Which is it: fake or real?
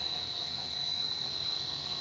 fake